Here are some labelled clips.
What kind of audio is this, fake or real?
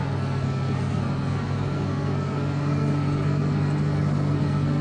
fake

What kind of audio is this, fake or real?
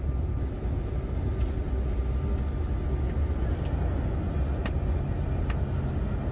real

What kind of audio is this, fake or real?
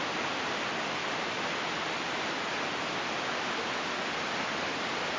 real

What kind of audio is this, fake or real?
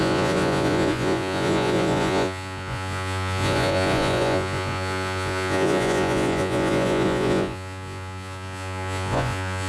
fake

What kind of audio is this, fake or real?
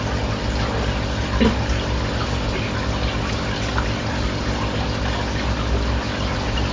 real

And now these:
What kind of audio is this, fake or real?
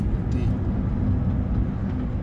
real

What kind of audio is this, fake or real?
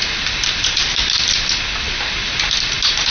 real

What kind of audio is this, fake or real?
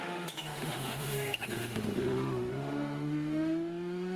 fake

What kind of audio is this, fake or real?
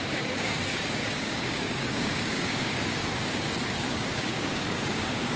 fake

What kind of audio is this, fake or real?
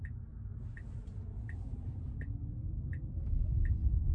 real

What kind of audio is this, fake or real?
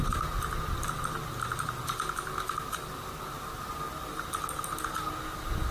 real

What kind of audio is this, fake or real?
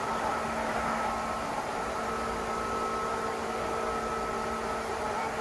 real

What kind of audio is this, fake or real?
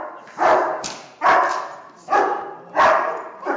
real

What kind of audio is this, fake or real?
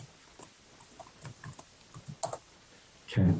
real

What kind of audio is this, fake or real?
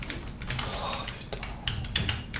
real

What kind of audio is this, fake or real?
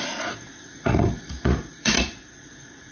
fake